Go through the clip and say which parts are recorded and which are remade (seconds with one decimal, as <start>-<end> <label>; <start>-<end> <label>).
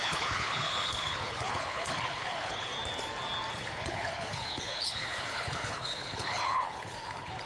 0.0-2.7 remade; 2.7-3.5 recorded; 3.5-7.5 remade